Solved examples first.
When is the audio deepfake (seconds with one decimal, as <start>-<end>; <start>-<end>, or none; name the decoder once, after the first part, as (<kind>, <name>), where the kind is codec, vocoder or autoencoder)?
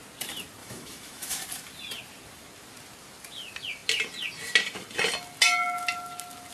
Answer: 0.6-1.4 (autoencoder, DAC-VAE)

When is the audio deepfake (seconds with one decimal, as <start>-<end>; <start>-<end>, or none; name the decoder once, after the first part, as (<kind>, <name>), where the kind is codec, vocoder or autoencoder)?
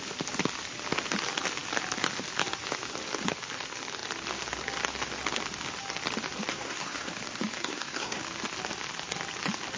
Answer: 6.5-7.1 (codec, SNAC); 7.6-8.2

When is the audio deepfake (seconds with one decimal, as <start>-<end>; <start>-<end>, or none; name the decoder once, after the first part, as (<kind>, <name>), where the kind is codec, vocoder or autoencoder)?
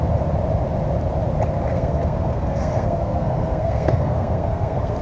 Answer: 1.7-5.0 (codec, SNAC)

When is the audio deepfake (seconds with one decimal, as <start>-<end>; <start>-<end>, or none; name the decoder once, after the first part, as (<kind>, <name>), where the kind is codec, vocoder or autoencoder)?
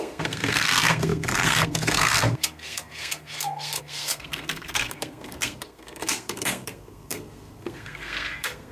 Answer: 0.0-8.7 (codec, SNAC)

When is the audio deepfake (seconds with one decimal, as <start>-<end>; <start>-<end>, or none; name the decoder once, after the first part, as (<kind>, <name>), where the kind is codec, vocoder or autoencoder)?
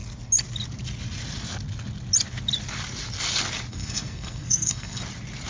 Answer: 3.7-5.0 (codec, SNAC)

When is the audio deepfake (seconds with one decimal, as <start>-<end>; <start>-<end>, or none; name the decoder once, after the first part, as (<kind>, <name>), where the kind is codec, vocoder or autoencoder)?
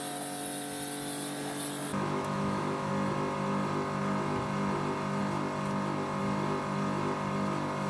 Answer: 1.9-2.9 (autoencoder, DAC-VAE)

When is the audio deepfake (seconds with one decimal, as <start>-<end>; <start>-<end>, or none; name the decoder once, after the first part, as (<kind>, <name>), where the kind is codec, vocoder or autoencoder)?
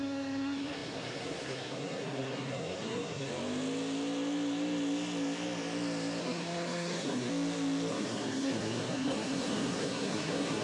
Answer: 0.0-3.3 (codec, SNAC); 6.2-7.3; 7.9-10.6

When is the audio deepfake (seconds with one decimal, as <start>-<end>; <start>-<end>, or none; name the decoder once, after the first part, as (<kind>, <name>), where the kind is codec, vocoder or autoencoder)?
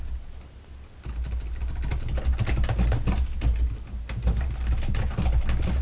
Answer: none